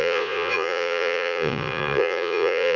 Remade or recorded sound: remade